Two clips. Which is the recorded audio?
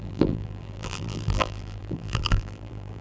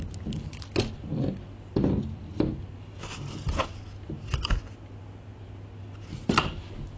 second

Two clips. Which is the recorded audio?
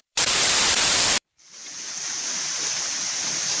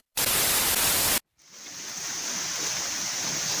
second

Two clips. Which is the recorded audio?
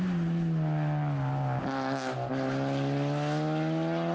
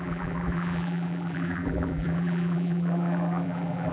first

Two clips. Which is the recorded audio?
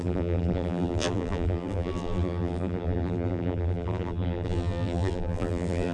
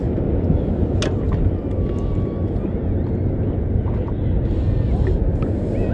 second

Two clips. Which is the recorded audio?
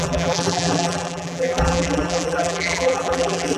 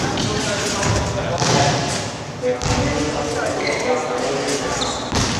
second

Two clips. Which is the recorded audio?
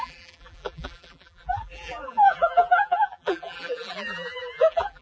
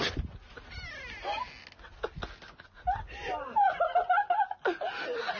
second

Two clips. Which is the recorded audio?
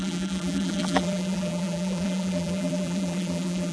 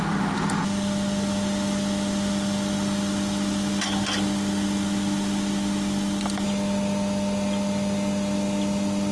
second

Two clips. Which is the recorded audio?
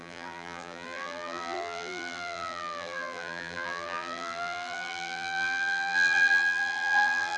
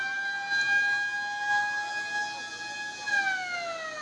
second